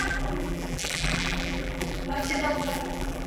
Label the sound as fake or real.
fake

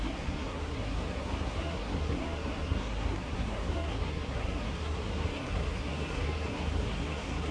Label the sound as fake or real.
fake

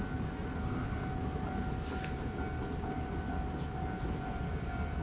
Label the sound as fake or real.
real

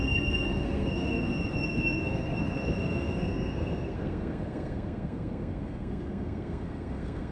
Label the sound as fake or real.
fake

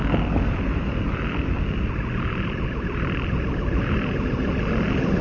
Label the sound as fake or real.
real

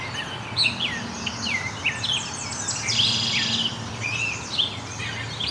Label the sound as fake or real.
real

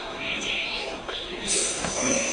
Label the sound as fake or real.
fake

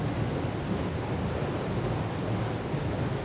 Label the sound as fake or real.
real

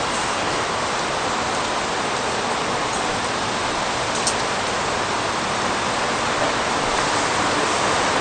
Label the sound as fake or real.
real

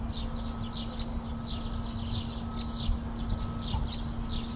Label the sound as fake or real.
real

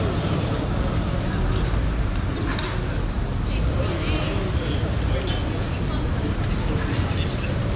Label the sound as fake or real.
real